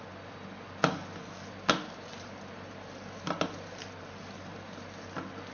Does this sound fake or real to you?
real